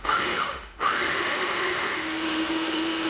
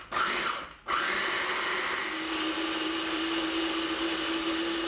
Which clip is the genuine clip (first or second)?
second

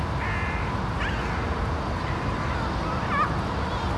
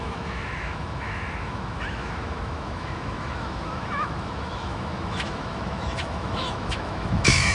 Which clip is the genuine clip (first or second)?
first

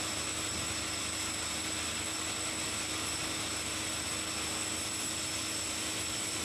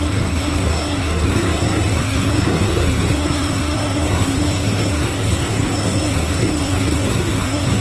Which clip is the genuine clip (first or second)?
first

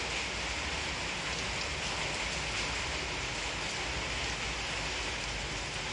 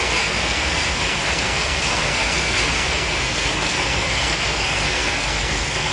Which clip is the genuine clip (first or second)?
first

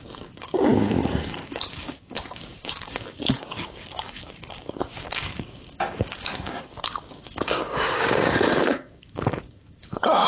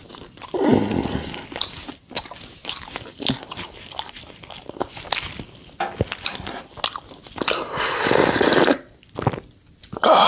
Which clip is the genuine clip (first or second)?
second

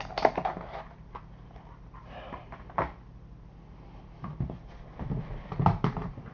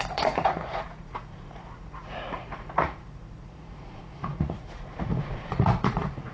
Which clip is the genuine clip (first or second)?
first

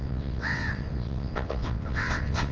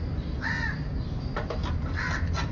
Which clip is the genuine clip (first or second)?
second